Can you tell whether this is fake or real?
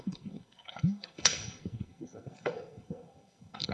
fake